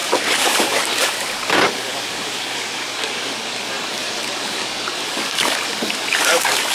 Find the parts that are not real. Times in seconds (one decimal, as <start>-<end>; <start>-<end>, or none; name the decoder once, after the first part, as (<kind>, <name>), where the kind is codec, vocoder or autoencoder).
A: 0.0-6.7 (codec, DAC)